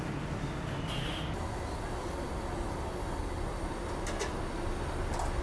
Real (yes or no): yes